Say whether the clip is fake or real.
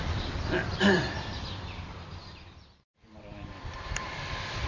fake